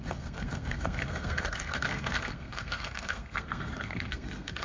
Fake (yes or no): yes